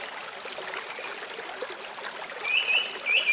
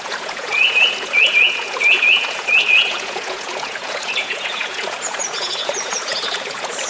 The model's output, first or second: second